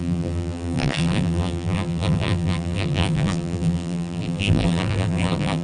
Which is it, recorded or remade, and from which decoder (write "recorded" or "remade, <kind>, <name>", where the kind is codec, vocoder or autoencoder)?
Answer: remade, vocoder, BigVGAN v2